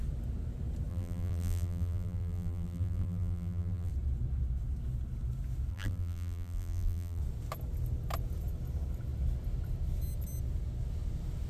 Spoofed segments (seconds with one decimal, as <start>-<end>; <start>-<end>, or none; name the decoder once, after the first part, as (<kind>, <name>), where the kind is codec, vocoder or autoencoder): 0.9-3.9 (vocoder, BigVGAN v2); 5.7-7.2